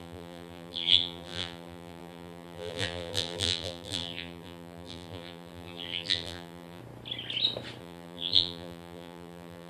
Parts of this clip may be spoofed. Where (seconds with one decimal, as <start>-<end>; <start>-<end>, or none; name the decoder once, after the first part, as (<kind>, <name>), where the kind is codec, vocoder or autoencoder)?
0.0-6.8 (vocoder, BigVGAN v2); 7.8-9.7